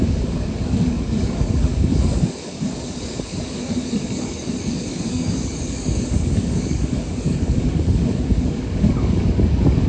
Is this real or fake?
fake